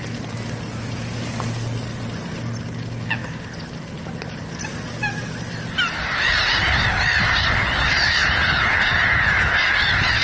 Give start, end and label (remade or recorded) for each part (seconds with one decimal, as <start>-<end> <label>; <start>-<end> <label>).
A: 0.0-8.2 recorded; 8.2-9.5 remade; 9.5-10.2 recorded